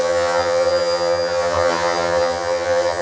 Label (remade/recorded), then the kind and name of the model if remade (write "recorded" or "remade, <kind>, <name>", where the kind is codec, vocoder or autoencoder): remade, vocoder, HiFi-GAN